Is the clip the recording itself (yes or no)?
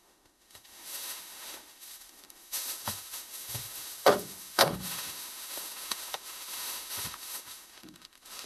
no